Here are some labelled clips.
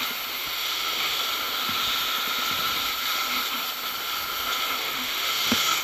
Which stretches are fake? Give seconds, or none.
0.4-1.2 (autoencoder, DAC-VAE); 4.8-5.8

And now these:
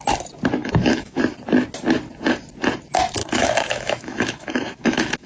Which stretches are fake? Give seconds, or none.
0.6-1.2 (autoencoder, DAC-VAE); 3.2-5.3

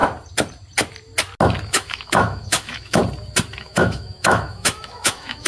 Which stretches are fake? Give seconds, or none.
1.7-3.0 (autoencoder, DAC-VAE); 3.6-5.5

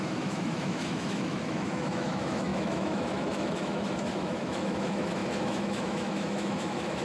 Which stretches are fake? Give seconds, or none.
0.0-7.0 (autoencoder, DAC-VAE)

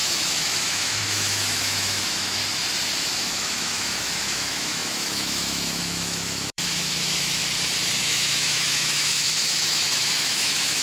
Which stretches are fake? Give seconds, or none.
0.0-2.4 (autoencoder, DAC-VAE); 3.0-7.4; 8.0-10.8

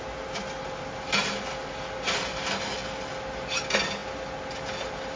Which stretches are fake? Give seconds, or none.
none

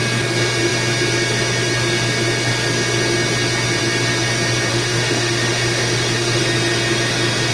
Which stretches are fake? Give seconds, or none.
4.7-6.4 (autoencoder, DAC-VAE)